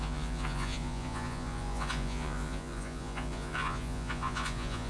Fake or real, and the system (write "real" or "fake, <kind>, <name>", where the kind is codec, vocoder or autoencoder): fake, vocoder, Vocos